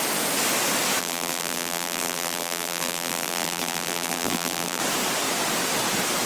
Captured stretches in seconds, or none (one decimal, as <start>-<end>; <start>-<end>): 0.0-1.0; 4.8-6.3